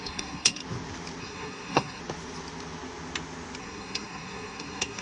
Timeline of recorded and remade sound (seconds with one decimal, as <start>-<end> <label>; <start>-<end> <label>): 0.0-0.6 remade; 0.6-1.2 recorded; 1.2-2.0 remade; 2.0-3.6 recorded; 3.6-5.0 remade